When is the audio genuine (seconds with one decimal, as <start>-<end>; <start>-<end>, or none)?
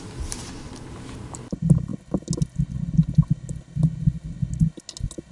1.9-5.3